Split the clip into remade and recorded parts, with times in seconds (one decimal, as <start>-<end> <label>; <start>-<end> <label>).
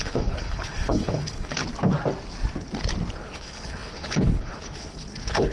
0.0-1.6 remade; 1.6-3.2 recorded; 3.2-5.5 remade